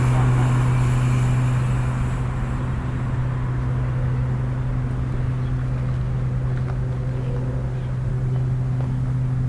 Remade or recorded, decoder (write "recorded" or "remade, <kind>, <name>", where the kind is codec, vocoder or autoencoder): recorded